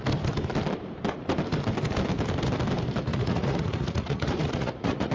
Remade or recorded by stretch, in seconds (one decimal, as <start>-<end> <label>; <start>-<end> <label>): 0.0-3.1 recorded; 3.1-5.1 remade